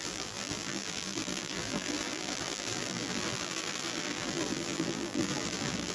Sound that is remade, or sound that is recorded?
remade